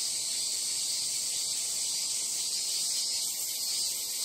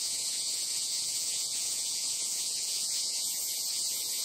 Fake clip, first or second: second